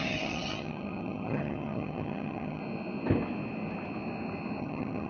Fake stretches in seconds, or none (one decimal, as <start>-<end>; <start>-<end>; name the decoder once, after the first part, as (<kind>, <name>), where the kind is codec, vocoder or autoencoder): 0.0-2.6 (vocoder, HiFi-GAN); 4.6-5.1